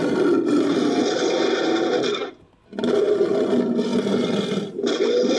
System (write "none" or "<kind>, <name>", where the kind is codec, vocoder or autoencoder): none